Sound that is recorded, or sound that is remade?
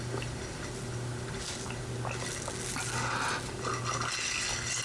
recorded